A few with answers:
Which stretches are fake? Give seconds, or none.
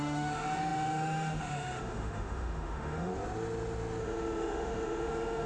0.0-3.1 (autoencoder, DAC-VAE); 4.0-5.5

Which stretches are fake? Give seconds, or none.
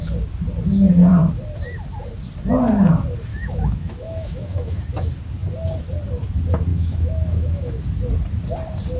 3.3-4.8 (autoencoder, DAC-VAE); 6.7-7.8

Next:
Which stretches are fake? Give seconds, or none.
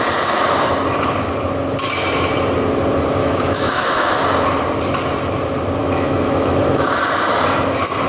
3.2-4.2 (autoencoder, DAC-VAE); 5.8-7.0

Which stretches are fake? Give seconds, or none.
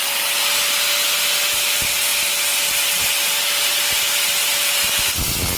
none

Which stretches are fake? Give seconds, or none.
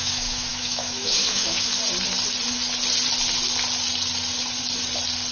0.0-1.7 (autoencoder, DAC-VAE)